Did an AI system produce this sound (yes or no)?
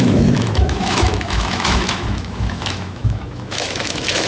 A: yes